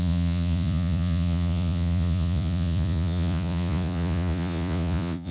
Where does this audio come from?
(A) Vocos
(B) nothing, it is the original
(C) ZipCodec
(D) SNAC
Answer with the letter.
A